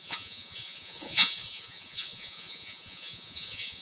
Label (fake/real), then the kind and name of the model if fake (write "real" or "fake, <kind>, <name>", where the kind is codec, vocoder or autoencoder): fake, vocoder, Vocos